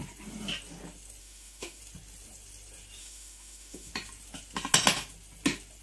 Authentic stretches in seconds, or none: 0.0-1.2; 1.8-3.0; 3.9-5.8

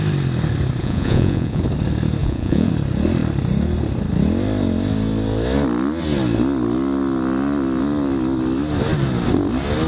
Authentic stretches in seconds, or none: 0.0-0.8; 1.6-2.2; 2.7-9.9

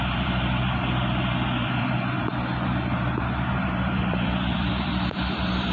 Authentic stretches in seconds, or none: 2.3-3.6

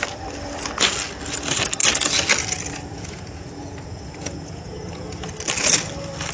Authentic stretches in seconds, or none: 0.0-2.9; 5.3-6.3